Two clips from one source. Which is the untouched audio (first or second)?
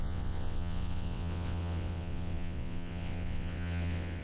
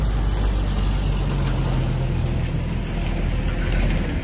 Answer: second